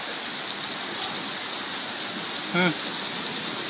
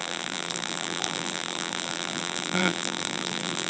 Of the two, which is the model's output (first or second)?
second